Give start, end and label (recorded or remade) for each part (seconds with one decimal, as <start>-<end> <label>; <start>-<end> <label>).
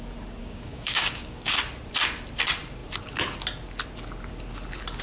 0.0-0.4 recorded; 0.4-1.6 remade; 1.6-5.0 recorded